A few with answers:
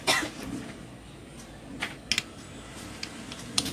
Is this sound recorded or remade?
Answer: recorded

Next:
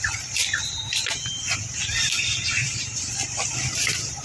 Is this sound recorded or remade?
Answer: recorded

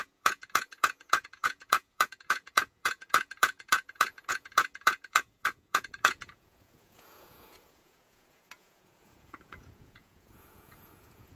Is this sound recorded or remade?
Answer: remade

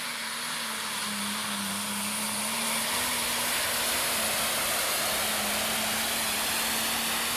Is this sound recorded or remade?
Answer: recorded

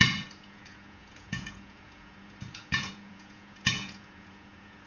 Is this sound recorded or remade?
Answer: remade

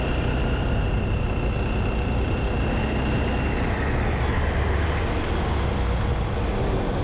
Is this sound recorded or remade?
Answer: recorded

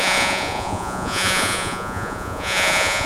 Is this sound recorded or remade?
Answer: remade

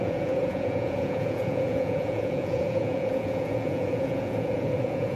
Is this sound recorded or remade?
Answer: remade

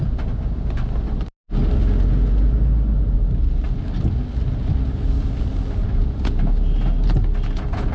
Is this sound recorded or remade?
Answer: recorded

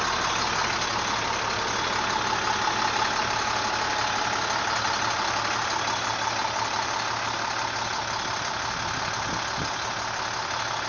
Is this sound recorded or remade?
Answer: recorded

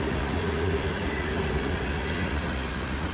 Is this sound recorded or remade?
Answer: remade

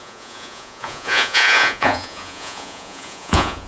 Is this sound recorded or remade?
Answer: remade